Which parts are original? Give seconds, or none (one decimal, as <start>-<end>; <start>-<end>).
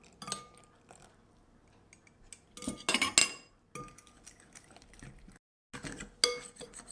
0.0-6.9